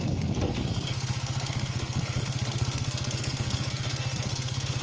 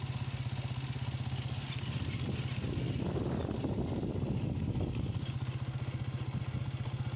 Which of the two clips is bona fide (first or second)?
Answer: second